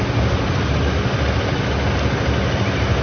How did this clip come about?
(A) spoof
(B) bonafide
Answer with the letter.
B